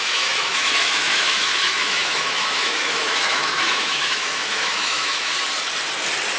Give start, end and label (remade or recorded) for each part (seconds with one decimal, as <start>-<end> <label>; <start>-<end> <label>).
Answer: 0.0-5.3 remade; 5.3-6.4 recorded